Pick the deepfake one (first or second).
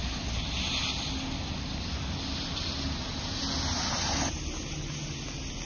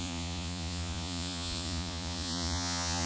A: second